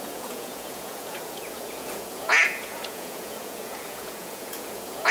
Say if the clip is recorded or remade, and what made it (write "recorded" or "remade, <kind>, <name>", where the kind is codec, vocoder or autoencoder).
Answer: remade, vocoder, Vocos